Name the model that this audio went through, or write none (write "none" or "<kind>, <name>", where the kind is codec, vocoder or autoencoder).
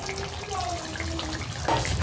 none